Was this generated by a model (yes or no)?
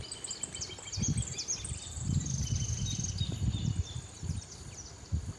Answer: no